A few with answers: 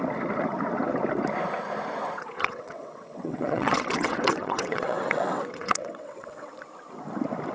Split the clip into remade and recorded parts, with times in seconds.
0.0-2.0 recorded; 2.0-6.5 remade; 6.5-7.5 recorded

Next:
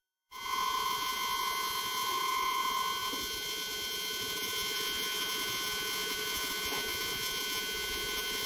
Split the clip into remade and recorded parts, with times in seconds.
0.0-8.5 remade

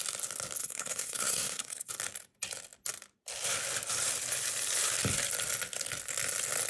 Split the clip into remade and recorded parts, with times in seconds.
0.0-0.6 recorded; 0.6-1.9 remade; 1.9-6.7 recorded

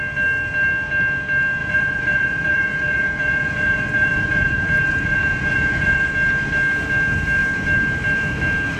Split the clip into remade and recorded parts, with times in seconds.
0.0-1.6 recorded; 1.6-6.1 remade; 6.1-8.8 recorded

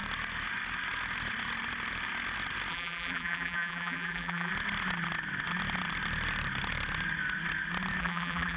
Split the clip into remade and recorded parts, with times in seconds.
0.0-2.7 recorded; 2.7-4.5 remade; 4.5-8.0 recorded; 8.0-8.6 remade

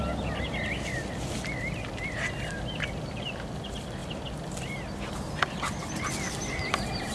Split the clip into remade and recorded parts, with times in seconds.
0.0-7.1 recorded